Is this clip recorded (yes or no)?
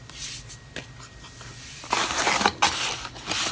yes